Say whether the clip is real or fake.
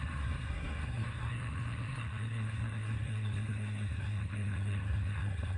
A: fake